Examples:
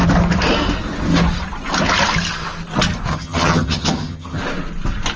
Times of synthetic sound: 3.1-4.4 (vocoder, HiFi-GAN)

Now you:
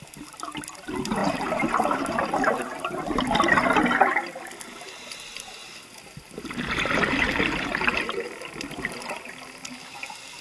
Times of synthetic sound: 1.2-3.0 (vocoder, BigVGAN v2); 5.6-8.5

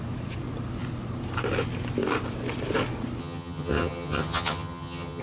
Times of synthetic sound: 3.2-5.2 (vocoder, HiFi-GAN)

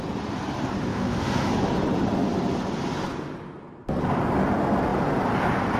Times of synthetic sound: 0.9-1.5 (autoencoder, DAC-VAE)

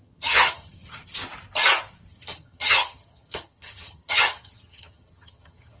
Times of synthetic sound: 0.0-1.2 (vocoder, HiFi-GAN); 2.1-5.8